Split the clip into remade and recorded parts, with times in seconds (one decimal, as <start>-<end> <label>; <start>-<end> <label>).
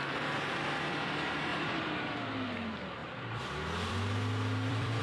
0.0-1.5 recorded; 1.5-2.2 remade; 2.2-3.0 recorded; 3.0-5.0 remade